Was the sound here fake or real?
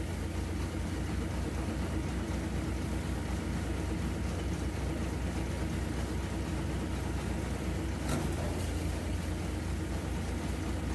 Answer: real